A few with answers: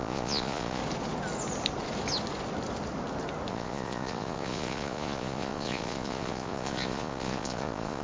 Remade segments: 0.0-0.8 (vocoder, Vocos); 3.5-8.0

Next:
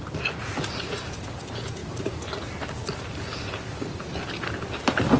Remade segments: none

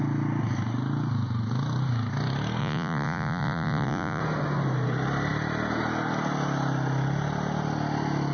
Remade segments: 2.6-4.2 (vocoder, Vocos)

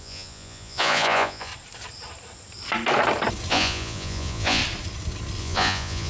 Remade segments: 0.0-1.5 (vocoder, Vocos); 3.5-4.6; 5.4-6.1

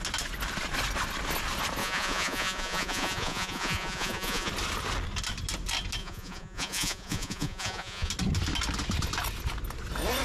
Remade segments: 1.8-4.5 (vocoder, Vocos); 6.0-8.1